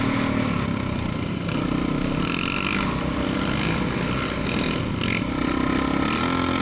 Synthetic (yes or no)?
no